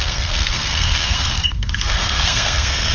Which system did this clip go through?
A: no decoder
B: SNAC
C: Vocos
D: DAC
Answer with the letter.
B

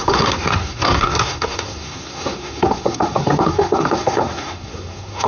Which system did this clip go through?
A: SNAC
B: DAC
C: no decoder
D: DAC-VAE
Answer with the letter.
A